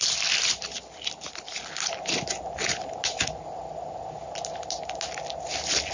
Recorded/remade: recorded